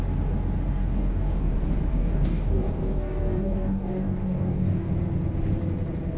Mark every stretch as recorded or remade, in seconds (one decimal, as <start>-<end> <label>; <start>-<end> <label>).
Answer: 0.0-0.7 recorded; 0.7-1.5 remade; 1.5-1.9 recorded; 1.9-4.9 remade; 4.9-6.2 recorded